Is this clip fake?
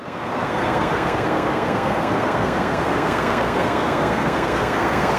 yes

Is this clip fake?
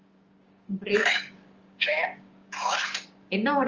yes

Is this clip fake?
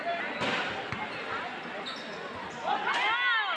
no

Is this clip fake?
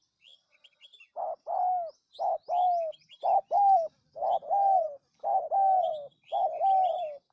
no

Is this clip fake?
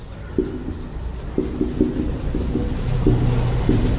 no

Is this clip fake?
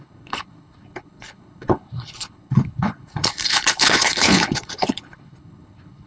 yes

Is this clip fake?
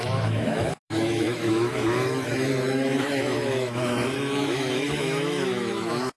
yes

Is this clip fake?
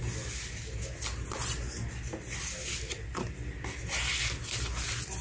no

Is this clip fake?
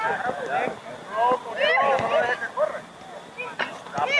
no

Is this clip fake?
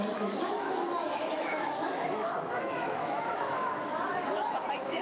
yes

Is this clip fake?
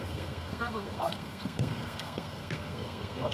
yes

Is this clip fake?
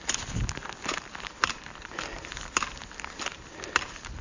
no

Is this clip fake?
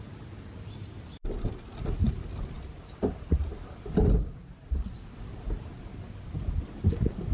no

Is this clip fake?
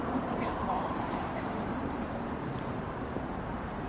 yes